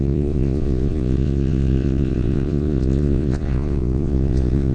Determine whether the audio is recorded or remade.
remade